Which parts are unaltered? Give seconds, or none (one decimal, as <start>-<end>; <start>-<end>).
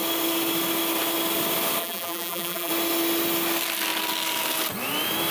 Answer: 0.0-1.8; 2.7-5.3